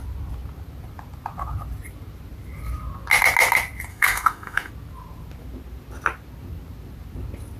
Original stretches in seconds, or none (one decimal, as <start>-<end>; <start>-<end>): 0.0-3.9; 4.7-7.6